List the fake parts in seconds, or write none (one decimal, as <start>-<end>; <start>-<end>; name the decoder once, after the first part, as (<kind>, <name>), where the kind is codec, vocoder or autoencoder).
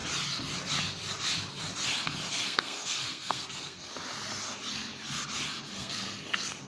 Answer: 2.3-3.9 (codec, SNAC); 5.7-6.7